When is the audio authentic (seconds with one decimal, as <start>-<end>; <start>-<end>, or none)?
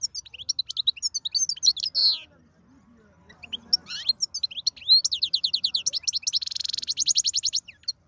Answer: 0.0-8.1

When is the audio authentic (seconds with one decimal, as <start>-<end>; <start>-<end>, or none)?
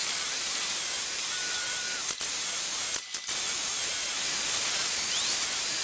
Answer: 0.0-5.8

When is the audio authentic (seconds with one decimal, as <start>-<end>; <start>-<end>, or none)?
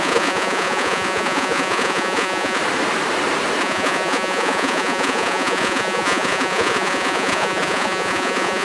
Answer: 2.6-3.6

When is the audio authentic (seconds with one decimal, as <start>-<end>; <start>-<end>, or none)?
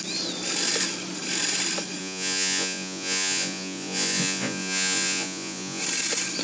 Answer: 0.0-2.0; 5.8-6.4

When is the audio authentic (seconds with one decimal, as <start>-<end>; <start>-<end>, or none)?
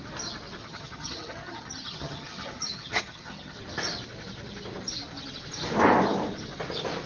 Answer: 0.0-0.6; 3.6-7.1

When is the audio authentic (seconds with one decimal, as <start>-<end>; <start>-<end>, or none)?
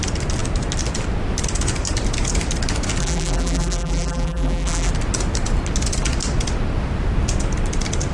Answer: 0.0-3.0; 4.9-8.1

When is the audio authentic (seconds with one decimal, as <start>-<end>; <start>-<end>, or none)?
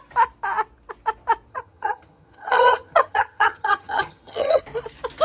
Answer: 0.0-1.5; 4.6-5.2